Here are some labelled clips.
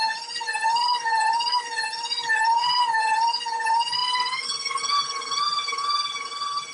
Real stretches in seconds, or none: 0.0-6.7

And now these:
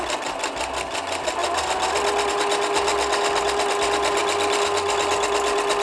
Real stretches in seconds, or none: 0.0-5.8

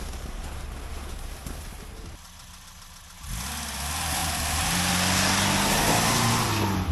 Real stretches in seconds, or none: 0.0-6.9

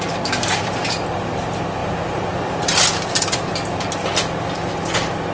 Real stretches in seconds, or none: 0.0-5.3

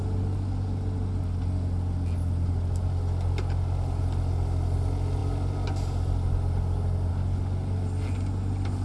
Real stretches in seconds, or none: 0.0-8.8

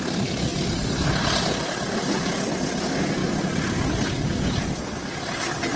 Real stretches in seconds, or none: 0.0-5.8

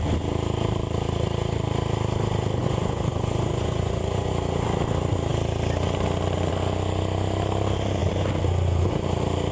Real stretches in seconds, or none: 0.0-2.6; 4.3-9.5